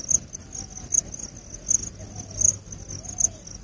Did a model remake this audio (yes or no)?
no